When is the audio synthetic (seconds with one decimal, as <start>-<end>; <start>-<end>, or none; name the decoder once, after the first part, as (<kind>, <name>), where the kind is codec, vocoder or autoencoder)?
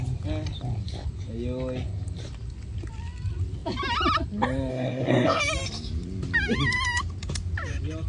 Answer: 4.7-5.4 (codec, SNAC)